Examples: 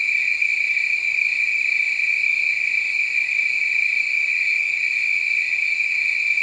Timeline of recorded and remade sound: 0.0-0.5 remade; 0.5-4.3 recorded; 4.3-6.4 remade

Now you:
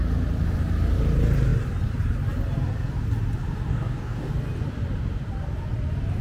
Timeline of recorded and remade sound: 0.0-3.7 recorded; 3.7-4.3 remade; 4.3-6.2 recorded

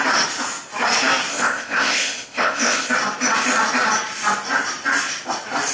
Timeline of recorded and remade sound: 0.0-1.3 recorded; 1.3-2.9 remade; 2.9-5.7 recorded

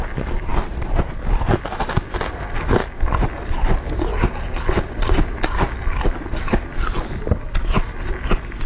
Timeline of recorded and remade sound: 0.0-8.7 recorded

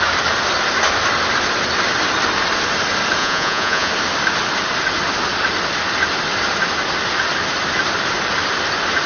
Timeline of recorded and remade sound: 0.0-3.2 recorded; 3.2-3.9 remade; 3.9-9.1 recorded

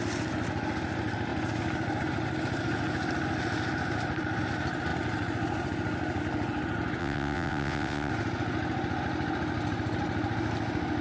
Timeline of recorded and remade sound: 0.0-7.0 recorded; 7.0-8.1 remade; 8.1-11.0 recorded